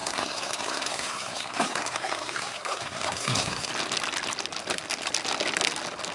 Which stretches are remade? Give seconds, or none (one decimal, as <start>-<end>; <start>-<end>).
0.0-3.7